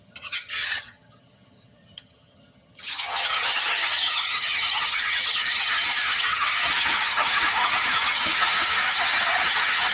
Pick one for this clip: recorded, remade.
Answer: remade